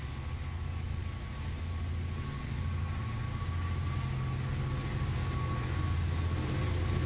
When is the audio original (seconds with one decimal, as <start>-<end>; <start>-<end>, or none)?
0.0-1.0; 2.2-7.1